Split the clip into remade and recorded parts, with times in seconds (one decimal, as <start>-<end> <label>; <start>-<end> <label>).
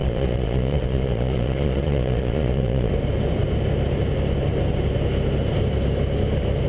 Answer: 0.0-2.9 remade; 2.9-6.7 recorded